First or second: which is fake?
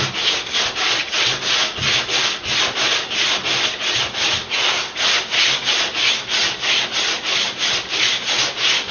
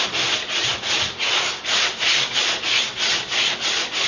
second